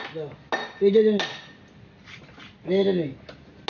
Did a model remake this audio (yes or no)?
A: no